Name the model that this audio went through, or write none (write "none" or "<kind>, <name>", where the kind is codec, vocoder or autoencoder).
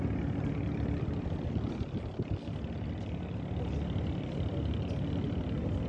none